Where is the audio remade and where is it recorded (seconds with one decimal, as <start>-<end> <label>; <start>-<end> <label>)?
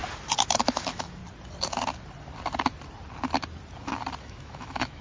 0.0-0.6 recorded; 0.6-1.2 remade; 1.2-4.2 recorded; 4.2-5.0 remade